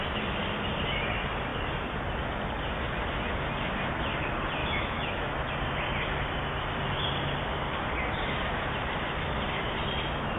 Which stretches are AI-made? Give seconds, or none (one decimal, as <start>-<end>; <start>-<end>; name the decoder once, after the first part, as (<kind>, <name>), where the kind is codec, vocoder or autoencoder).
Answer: 4.6-5.5 (autoencoder, DAC-VAE)